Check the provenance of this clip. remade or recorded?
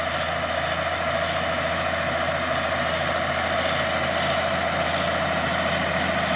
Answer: recorded